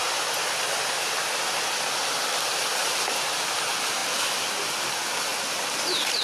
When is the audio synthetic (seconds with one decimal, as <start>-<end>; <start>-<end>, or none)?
none